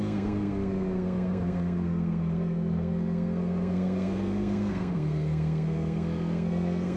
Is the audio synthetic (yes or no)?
yes